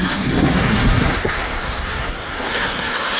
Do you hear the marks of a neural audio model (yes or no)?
yes